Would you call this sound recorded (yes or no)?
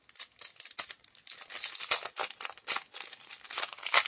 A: yes